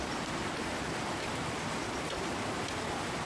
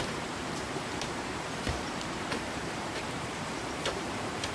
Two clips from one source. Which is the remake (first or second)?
second